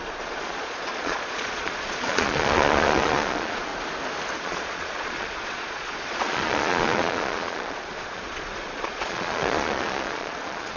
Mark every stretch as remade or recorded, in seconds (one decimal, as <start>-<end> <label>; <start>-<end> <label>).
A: 0.0-3.7 remade; 3.7-4.4 recorded; 4.4-10.8 remade

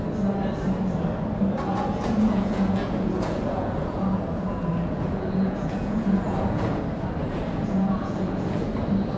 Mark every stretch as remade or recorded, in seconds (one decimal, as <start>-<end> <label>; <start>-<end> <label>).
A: 0.0-1.7 recorded; 1.7-6.8 remade; 6.8-7.2 recorded; 7.2-8.7 remade; 8.7-9.2 recorded

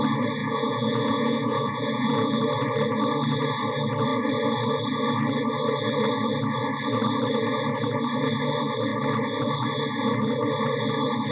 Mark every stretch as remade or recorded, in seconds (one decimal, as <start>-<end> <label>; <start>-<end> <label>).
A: 0.0-0.4 recorded; 0.4-2.4 remade; 2.4-11.3 recorded

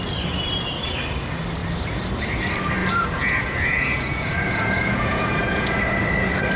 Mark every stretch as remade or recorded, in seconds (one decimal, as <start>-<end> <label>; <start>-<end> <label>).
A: 0.0-2.8 recorded; 2.8-5.7 remade; 5.7-6.6 recorded

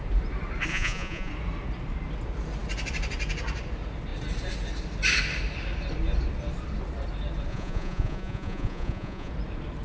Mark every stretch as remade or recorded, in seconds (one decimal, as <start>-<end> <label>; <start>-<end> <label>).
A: 0.0-0.7 recorded; 0.7-1.3 remade; 1.3-7.5 recorded; 7.5-9.3 remade; 9.3-9.8 recorded

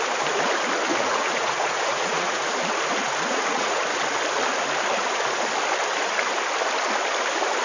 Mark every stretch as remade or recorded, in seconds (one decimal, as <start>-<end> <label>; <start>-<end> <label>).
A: 0.0-0.9 recorded; 0.9-2.4 remade; 2.4-3.3 recorded; 3.3-3.8 remade; 3.8-7.6 recorded

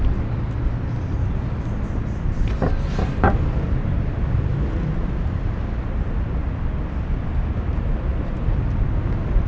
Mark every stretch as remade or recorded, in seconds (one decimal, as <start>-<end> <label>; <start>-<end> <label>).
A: 0.0-9.5 recorded